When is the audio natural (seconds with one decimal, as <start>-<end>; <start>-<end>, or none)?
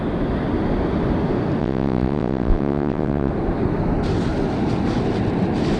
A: 0.0-1.6; 3.3-5.8